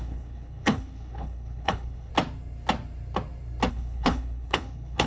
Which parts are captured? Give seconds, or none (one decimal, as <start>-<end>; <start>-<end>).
2.1-3.7